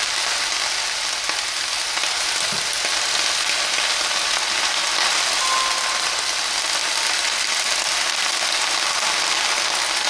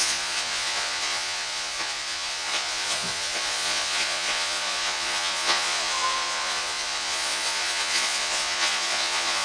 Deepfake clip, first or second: second